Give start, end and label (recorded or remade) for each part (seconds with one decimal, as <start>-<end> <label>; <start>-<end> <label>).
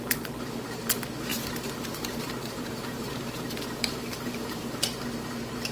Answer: 0.0-1.3 recorded; 1.3-4.7 remade; 4.7-5.7 recorded